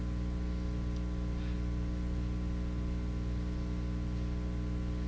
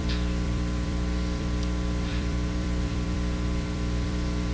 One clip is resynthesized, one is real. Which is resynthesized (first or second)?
second